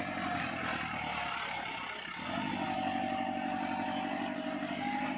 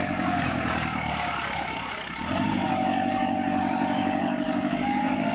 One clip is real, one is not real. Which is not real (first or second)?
second